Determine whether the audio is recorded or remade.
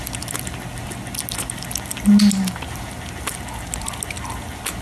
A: recorded